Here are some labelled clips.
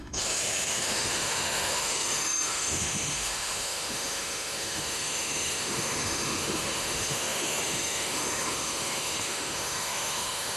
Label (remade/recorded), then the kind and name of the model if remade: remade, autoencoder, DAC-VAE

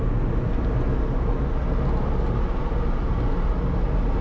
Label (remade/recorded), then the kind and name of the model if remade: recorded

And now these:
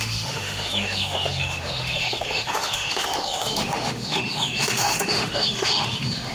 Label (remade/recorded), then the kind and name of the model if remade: remade, autoencoder, DAC-VAE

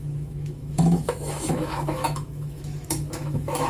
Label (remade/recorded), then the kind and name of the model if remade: remade, autoencoder, DAC-VAE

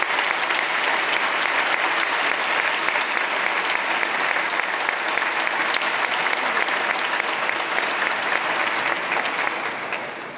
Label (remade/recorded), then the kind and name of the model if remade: recorded